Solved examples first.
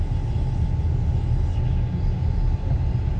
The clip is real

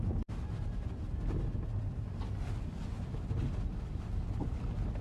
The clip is real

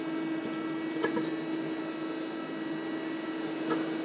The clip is real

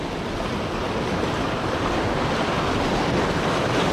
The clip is real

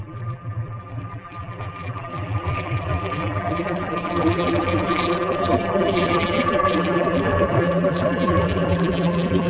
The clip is fake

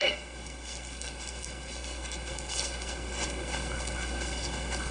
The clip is fake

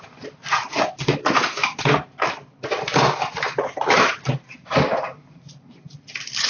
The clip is real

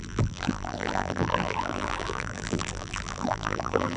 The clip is fake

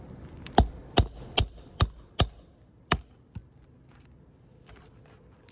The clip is real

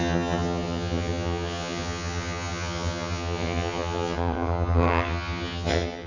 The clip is fake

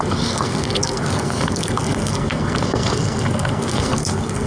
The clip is fake